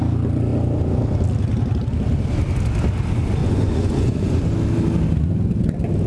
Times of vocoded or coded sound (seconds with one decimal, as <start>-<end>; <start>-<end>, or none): 3.4-4.4